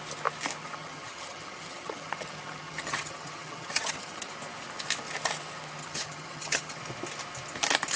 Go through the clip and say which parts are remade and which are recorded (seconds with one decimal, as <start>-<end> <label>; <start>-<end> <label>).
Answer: 0.0-0.6 recorded; 0.6-4.3 remade; 4.3-5.8 recorded; 5.8-6.8 remade; 6.8-8.0 recorded